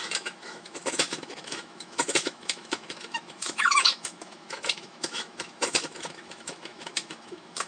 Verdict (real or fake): fake